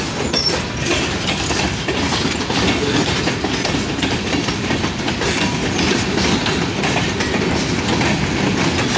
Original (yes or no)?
yes